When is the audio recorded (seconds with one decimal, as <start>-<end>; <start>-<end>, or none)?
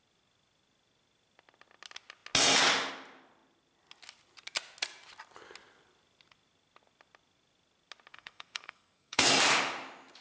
0.0-8.1; 9.3-10.2